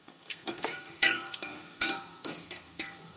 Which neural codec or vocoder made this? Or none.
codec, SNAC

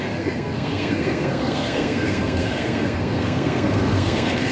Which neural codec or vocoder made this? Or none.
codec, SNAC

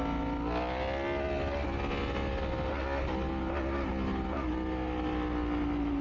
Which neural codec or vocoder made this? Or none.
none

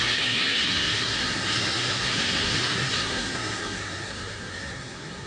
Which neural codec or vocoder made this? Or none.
codec, SNAC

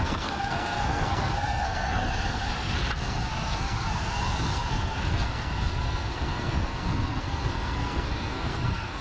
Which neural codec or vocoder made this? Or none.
codec, SNAC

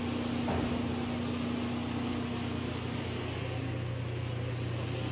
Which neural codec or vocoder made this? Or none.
none